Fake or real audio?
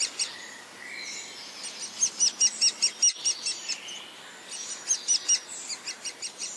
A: real